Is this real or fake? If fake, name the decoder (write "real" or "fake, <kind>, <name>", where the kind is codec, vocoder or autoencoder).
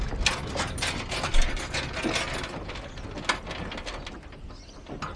real